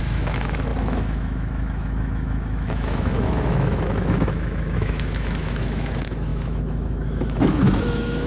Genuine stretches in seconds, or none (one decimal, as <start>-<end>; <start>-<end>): none